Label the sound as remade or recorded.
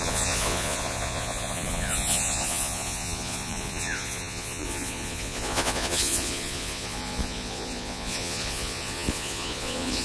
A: remade